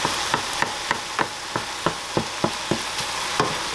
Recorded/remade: recorded